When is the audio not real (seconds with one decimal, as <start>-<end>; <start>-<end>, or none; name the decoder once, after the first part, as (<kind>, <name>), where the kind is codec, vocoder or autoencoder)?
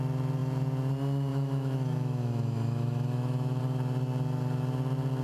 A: 1.3-3.6 (autoencoder, DAC-VAE)